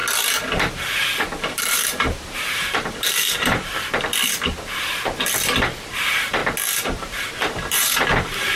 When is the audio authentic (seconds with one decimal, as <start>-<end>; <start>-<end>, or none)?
0.0-0.7; 3.7-5.9; 6.4-7.0